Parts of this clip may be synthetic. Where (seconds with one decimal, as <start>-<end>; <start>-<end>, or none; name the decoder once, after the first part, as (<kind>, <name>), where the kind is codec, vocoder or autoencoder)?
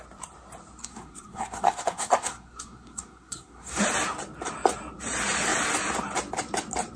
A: 0.8-3.8 (codec, SNAC)